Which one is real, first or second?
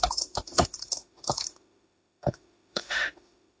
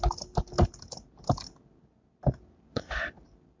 second